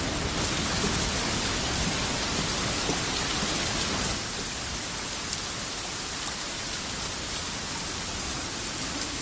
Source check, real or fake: real